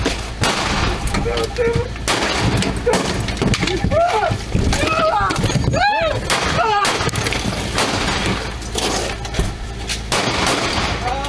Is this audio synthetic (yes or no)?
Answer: no